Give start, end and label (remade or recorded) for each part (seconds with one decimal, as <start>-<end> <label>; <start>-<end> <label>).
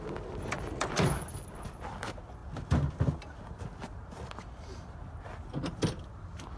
0.0-6.6 recorded